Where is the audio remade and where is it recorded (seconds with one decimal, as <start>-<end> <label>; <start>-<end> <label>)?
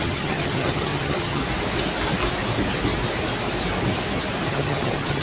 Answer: 0.0-1.4 remade; 1.4-4.5 recorded; 4.5-5.2 remade